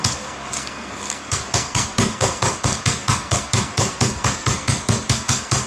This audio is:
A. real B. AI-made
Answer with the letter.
B